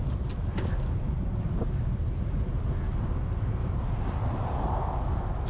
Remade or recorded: recorded